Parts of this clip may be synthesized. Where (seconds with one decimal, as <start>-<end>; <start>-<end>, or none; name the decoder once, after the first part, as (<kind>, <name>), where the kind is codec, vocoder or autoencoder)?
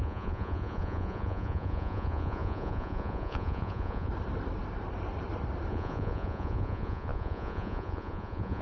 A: 0.0-4.1 (vocoder, Vocos); 5.7-8.6